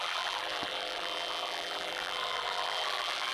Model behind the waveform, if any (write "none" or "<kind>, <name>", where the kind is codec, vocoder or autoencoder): vocoder, BigVGAN v2